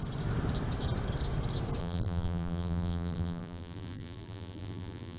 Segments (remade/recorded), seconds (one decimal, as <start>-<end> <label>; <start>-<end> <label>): 0.0-1.8 recorded; 1.8-5.2 remade